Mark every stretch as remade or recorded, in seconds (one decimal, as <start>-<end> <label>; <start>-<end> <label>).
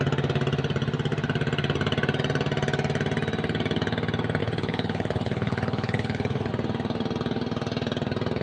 0.0-4.4 recorded; 4.4-6.5 remade; 6.5-8.4 recorded